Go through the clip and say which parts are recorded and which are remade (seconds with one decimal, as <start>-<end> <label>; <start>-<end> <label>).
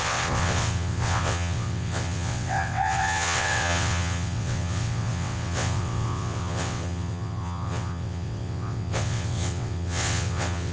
0.0-10.7 remade